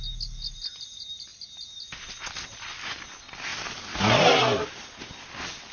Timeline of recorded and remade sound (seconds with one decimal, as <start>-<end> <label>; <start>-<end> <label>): 0.0-5.7 recorded